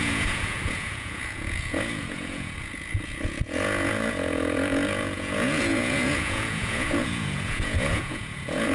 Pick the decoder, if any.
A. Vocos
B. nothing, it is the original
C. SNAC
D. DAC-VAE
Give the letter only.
A